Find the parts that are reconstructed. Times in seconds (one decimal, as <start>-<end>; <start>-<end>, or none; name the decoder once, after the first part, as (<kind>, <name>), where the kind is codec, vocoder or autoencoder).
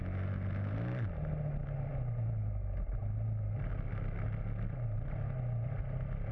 none